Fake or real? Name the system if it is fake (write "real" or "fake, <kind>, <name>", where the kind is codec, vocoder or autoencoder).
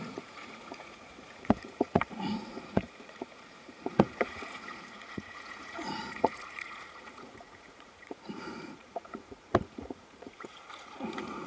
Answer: fake, vocoder, Vocos